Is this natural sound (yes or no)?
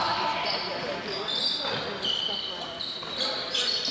yes